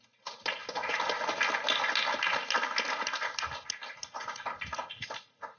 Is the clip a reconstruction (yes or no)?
no